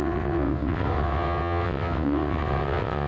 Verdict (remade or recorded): remade